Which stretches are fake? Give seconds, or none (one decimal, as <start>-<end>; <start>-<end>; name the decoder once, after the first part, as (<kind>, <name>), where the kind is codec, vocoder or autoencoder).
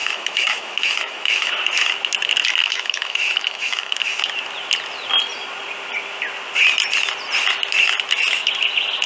0.0-1.5 (autoencoder, DAC-VAE); 2.6-4.2